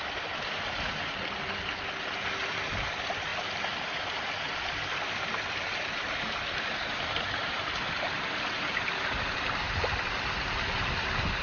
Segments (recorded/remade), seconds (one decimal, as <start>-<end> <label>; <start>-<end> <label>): 0.0-11.4 recorded